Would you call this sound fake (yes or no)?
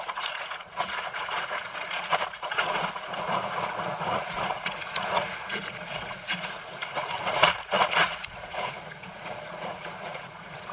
yes